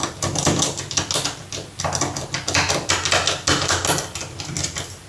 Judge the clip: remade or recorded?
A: recorded